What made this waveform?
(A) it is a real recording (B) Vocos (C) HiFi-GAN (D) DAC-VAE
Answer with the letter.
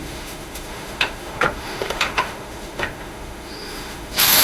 D